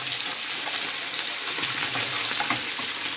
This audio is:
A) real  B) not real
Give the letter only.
A